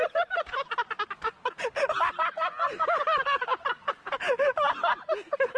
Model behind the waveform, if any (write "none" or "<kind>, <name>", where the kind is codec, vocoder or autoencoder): none